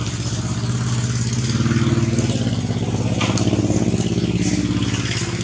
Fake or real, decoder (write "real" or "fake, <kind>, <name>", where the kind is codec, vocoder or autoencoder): real